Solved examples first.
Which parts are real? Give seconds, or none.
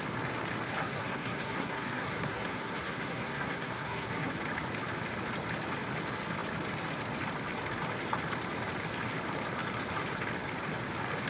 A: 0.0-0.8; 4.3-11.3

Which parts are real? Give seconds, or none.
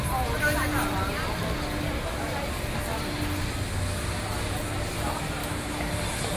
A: 0.0-5.4; 5.9-6.4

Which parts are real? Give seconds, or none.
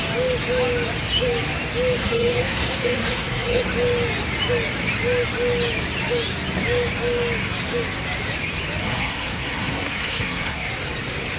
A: 0.0-2.0; 3.6-8.8; 10.7-11.4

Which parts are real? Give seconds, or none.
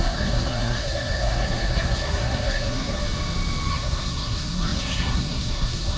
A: 3.0-3.7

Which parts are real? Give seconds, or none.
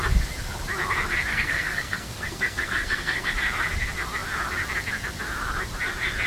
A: 0.0-1.3; 3.3-6.3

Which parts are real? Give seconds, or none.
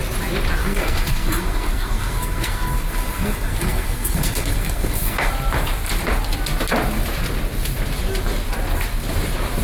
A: 0.0-0.6; 5.3-9.6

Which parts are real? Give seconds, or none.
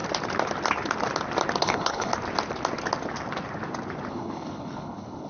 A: 0.0-1.6; 2.1-4.1